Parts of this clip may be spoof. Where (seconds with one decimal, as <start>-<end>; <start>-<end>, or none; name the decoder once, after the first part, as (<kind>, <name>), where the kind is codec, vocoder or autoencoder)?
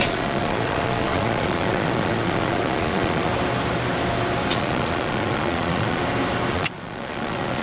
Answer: 0.0-3.3 (vocoder, Vocos); 4.5-6.0; 6.5-7.6